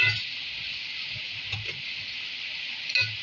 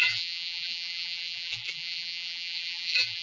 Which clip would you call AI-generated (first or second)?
second